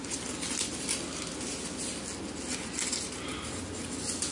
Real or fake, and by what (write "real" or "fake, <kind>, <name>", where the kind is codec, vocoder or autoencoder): real